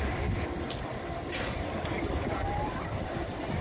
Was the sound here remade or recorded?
recorded